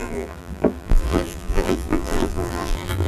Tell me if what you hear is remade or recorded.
remade